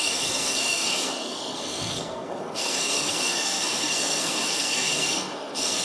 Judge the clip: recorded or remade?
remade